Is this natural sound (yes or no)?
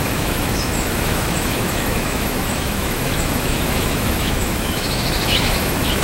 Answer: no